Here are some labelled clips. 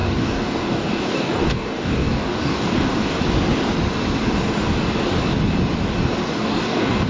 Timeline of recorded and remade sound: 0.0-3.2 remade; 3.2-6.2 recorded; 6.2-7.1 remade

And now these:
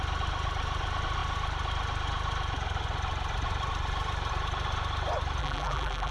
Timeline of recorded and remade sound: 0.0-5.4 recorded; 5.4-6.1 remade

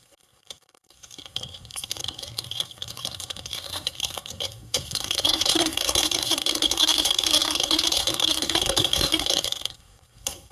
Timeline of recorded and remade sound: 0.0-10.5 remade

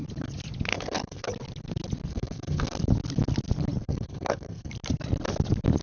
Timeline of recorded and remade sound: 0.0-0.7 recorded; 0.7-1.3 remade; 1.3-2.1 recorded; 2.1-2.8 remade; 2.8-3.8 recorded; 3.8-4.7 remade; 4.7-5.8 recorded

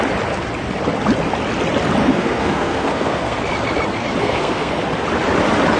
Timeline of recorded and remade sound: 0.0-2.0 recorded; 2.0-3.4 remade; 3.4-4.2 recorded; 4.2-4.8 remade; 4.8-5.8 recorded

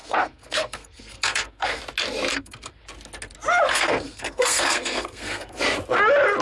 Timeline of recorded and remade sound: 0.0-1.8 remade; 1.8-2.3 recorded; 2.3-2.8 remade; 2.8-3.7 recorded; 3.7-5.6 remade; 5.6-6.4 recorded

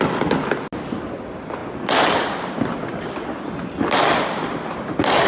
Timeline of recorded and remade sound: 0.0-5.3 recorded